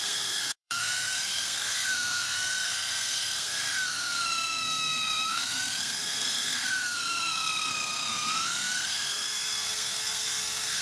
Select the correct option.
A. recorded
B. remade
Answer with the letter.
B